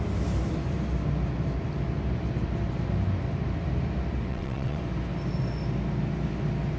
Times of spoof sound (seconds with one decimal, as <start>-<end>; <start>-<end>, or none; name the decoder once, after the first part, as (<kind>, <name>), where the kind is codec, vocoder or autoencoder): 4.3-4.8 (vocoder, WaveNeXt)